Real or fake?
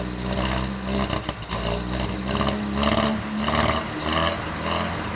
real